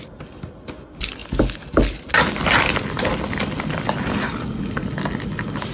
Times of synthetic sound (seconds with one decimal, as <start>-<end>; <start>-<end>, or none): none